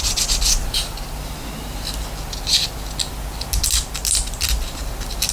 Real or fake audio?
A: real